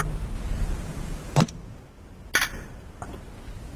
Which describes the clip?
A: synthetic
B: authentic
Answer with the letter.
B